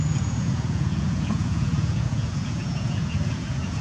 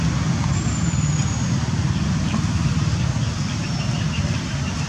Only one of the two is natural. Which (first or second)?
second